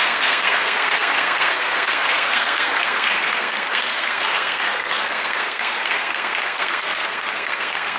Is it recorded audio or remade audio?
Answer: remade